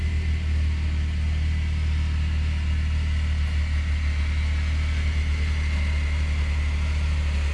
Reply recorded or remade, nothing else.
recorded